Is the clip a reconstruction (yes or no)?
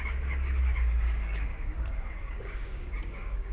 yes